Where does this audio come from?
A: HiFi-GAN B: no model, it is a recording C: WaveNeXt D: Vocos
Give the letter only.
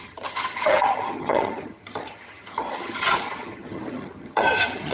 A